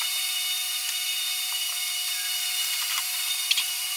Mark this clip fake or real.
fake